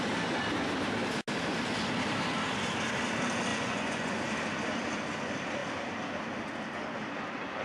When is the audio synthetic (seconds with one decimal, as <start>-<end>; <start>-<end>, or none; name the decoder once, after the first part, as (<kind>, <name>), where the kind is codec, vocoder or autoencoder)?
3.5-4.2 (vocoder, Vocos)